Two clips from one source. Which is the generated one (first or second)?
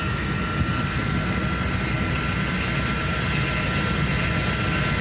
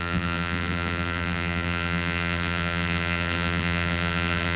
second